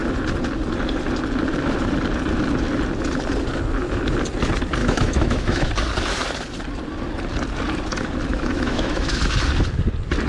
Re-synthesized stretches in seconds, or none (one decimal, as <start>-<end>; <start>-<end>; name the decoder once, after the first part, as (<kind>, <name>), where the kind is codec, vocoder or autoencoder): 4.8-5.7 (autoencoder, DAC-VAE); 8.3-9.2